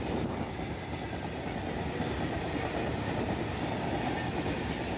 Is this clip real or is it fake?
real